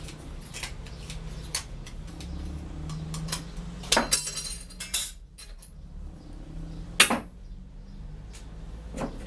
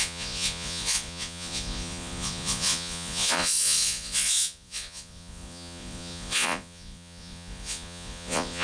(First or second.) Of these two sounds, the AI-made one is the second